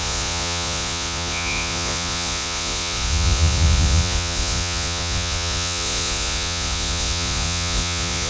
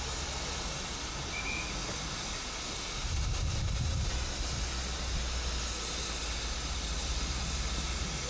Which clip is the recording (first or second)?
second